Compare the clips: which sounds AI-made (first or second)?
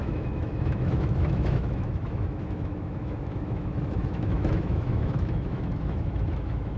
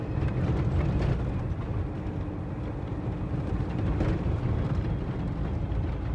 first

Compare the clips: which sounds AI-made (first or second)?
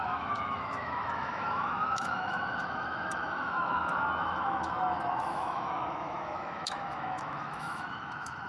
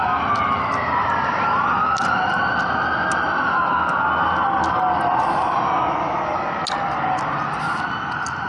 first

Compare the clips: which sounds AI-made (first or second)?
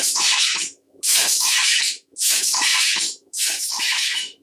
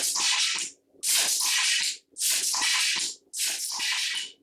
first